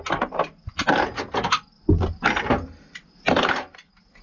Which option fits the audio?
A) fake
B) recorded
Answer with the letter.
B